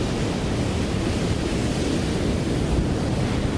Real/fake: real